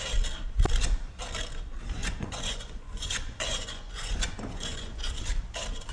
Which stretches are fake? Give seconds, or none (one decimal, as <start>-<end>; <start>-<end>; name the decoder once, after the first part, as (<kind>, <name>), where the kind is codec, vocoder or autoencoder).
2.0-5.1 (vocoder, Vocos)